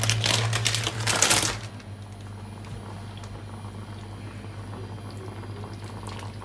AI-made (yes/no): no